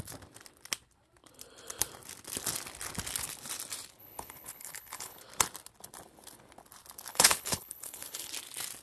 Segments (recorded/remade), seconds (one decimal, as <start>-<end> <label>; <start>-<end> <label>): 0.0-4.0 recorded; 4.0-5.2 remade; 5.2-7.1 recorded; 7.1-8.3 remade; 8.3-8.8 recorded